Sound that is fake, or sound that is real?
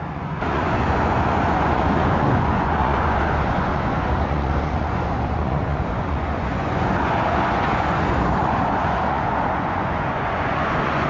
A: fake